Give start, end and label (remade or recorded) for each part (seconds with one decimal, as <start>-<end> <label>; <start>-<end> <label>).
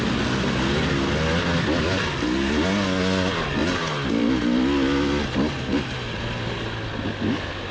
0.0-7.7 recorded